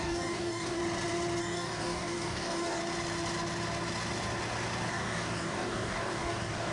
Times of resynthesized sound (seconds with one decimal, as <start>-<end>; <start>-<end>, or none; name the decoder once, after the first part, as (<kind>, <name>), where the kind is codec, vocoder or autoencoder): 0.0-0.8 (codec, DAC); 1.4-2.8; 4.9-6.7